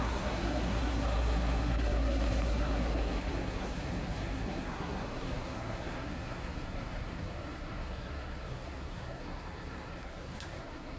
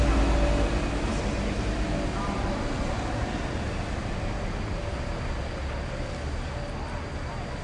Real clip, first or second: second